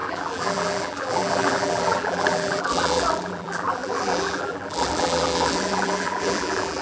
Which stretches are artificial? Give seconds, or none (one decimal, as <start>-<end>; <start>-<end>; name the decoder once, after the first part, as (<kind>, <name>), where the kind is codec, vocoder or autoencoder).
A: 0.0-6.8 (vocoder, BigVGAN v2)